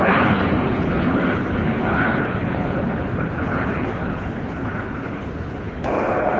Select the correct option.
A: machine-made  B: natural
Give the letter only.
A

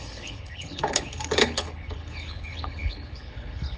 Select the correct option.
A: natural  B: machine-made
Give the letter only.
B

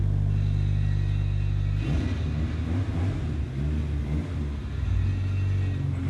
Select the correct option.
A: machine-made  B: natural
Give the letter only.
B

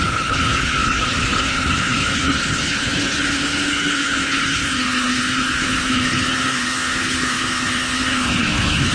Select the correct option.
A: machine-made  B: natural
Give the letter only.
A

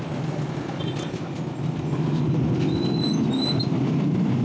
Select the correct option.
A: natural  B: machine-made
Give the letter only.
A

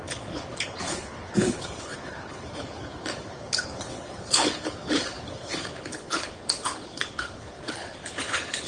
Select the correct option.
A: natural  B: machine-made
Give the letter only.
B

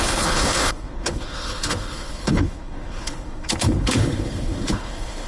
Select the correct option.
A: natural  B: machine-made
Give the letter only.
B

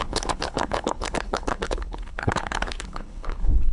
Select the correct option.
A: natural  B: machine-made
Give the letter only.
B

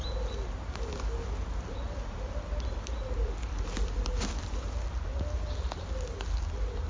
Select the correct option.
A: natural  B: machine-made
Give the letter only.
A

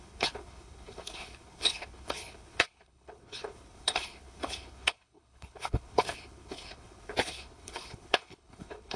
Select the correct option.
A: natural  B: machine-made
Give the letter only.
B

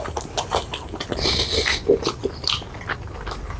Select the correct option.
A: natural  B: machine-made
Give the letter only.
A